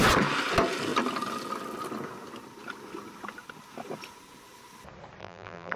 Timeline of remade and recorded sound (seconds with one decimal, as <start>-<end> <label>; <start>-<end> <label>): 0.0-5.2 recorded; 5.2-5.8 remade